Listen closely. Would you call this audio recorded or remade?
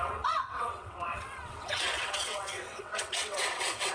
remade